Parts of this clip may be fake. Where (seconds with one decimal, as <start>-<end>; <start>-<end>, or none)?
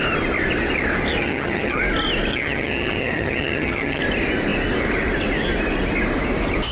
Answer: 1.2-1.8; 2.3-4.0